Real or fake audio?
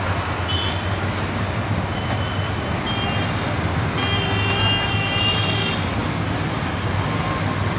real